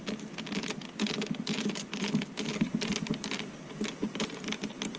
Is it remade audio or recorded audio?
recorded